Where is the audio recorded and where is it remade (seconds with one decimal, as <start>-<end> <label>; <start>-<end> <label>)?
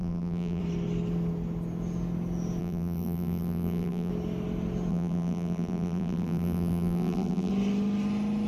0.0-0.6 remade; 0.6-2.6 recorded; 2.6-4.1 remade; 4.1-4.9 recorded; 4.9-7.5 remade; 7.5-8.5 recorded